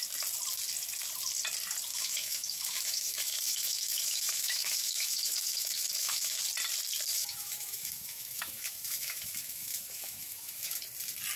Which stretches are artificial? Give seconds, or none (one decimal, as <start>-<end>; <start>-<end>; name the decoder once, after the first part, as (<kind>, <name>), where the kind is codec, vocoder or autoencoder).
1.9-6.4 (autoencoder, DAC-VAE); 7.1-10.8